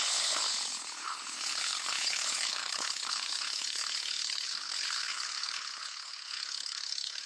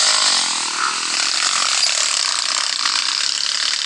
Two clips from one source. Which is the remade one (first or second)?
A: first